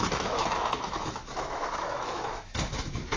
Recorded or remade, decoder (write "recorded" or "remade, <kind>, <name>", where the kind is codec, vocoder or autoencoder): remade, autoencoder, DAC-VAE